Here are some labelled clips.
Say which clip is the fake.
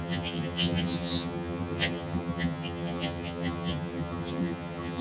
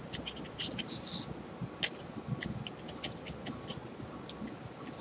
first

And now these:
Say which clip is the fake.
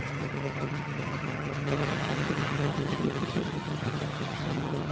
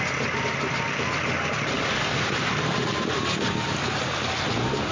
first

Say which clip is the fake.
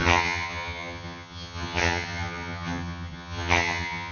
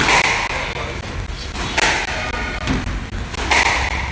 first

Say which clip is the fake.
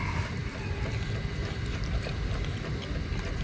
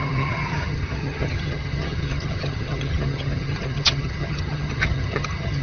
second